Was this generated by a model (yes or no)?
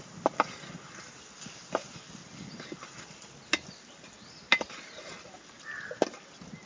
no